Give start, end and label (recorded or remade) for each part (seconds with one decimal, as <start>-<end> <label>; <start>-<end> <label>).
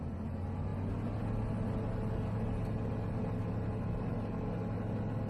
0.0-5.3 recorded